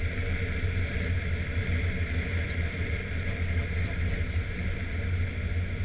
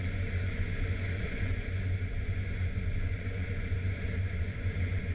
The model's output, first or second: second